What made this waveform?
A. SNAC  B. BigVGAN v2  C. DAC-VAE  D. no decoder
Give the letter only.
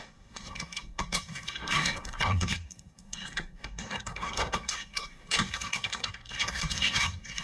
A